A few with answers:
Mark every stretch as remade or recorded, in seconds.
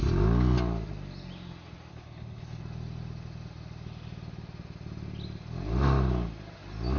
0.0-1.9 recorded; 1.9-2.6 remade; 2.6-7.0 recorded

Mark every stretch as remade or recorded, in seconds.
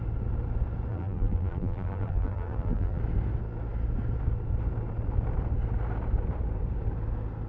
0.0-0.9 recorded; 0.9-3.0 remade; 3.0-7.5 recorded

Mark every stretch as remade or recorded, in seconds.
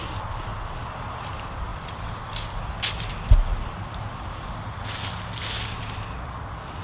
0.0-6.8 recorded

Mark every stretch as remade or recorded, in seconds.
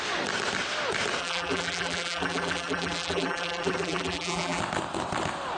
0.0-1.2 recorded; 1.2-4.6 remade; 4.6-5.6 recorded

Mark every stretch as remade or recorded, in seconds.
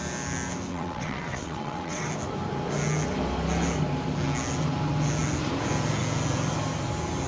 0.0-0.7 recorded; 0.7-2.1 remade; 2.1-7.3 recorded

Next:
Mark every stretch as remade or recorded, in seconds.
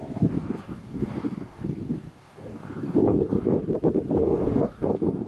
0.0-3.6 remade; 3.6-4.2 recorded; 4.2-5.3 remade